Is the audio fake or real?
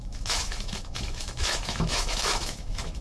fake